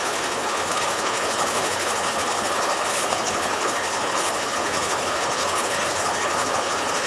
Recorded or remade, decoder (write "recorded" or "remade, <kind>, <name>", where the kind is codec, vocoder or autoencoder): remade, codec, HILCodec